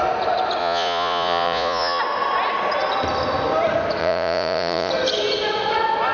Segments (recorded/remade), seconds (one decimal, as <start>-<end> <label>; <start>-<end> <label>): 0.0-0.6 recorded; 0.6-2.0 remade; 2.0-4.0 recorded; 4.0-4.9 remade; 4.9-6.1 recorded